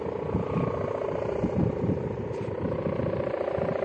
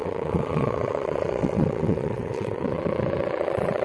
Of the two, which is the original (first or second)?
first